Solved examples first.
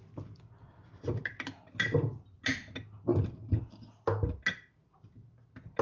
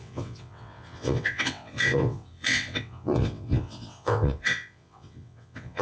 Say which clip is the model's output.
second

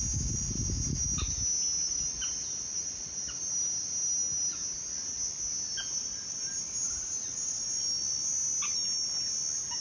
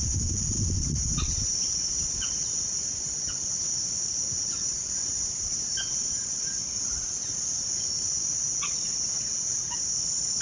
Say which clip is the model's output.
second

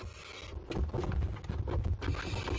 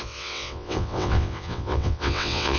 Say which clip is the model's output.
second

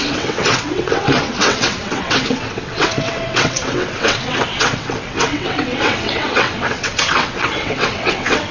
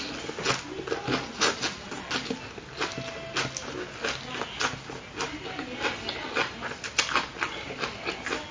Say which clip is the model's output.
first